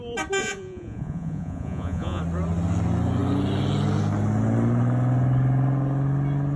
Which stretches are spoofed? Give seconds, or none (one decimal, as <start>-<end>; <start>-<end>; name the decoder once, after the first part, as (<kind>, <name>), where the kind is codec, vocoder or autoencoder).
0.4-2.2 (vocoder, Vocos)